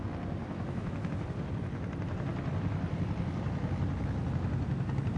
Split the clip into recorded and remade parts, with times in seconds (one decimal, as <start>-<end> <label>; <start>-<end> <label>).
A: 0.0-0.4 recorded; 0.4-1.1 remade; 1.1-5.2 recorded